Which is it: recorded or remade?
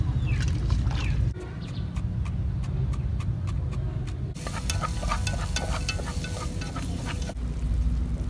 recorded